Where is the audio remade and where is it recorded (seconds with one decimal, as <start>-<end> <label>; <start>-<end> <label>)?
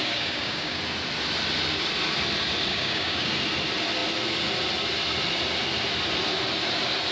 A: 0.0-0.8 remade; 0.8-2.7 recorded; 2.7-3.3 remade; 3.3-7.1 recorded